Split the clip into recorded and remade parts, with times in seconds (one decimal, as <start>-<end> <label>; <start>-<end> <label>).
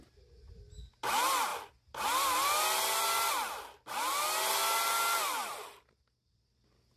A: 0.0-7.0 recorded